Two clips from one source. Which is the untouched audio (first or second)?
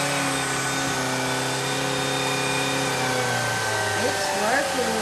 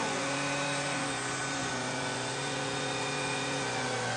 first